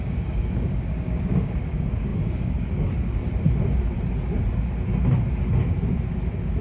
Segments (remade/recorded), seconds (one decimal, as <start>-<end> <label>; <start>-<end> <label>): 0.0-3.2 remade; 3.2-6.6 recorded